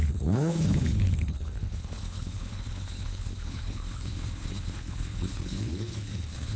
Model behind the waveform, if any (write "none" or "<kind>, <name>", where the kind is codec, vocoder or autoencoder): codec, HILCodec